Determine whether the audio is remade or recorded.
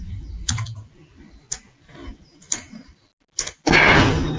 recorded